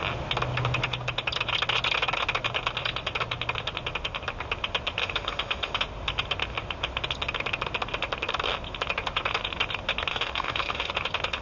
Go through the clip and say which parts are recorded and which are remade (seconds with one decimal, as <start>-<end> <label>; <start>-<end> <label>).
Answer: 0.0-5.0 recorded; 5.0-5.8 remade; 5.8-10.1 recorded; 10.1-10.9 remade; 10.9-11.4 recorded